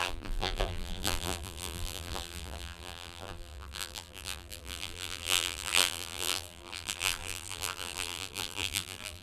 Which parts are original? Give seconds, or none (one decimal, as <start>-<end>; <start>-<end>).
none